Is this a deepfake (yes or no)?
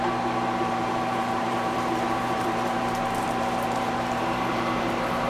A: yes